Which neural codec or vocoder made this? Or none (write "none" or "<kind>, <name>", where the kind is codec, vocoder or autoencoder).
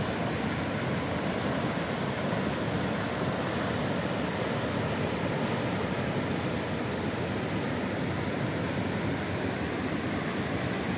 none